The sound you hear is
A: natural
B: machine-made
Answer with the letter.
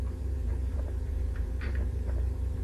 B